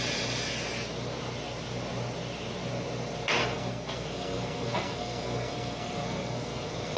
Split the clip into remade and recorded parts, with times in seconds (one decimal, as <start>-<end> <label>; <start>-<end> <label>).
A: 0.0-3.4 recorded; 3.4-7.0 remade